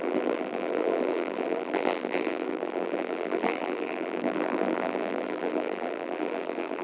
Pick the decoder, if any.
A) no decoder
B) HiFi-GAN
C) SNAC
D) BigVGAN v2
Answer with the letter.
D